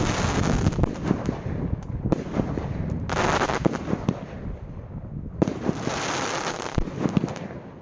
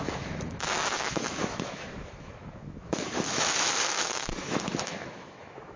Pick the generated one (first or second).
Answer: second